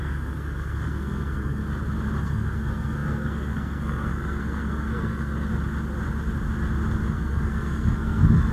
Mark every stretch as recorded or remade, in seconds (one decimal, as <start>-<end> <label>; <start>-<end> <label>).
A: 0.0-1.6 remade; 1.6-2.2 recorded; 2.2-5.5 remade; 5.5-7.1 recorded; 7.1-8.5 remade